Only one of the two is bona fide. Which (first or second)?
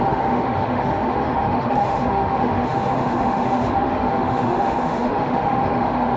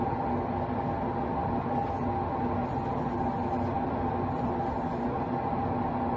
second